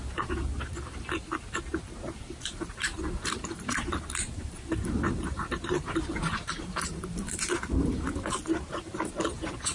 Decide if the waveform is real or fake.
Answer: fake